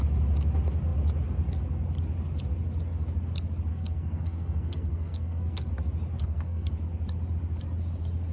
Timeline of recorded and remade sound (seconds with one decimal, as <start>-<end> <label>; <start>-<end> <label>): 0.0-3.7 recorded; 3.7-5.7 remade; 5.7-6.2 recorded; 6.2-6.7 remade; 6.7-8.3 recorded